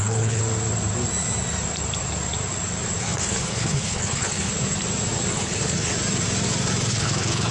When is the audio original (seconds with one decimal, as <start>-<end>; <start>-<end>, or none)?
0.4-3.0; 4.5-5.3; 5.9-6.9